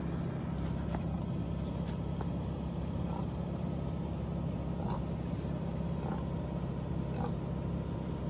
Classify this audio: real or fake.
real